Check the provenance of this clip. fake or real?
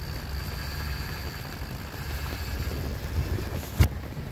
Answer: real